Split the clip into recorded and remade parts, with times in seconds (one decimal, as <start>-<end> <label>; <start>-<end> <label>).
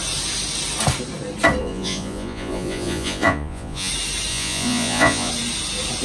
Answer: 0.0-1.6 recorded; 1.6-3.9 remade; 3.9-4.3 recorded; 4.3-5.3 remade; 5.3-6.0 recorded